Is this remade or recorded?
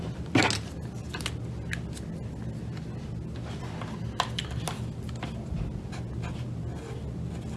recorded